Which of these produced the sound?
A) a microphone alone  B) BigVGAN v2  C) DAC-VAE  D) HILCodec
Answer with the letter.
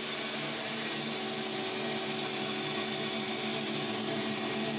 A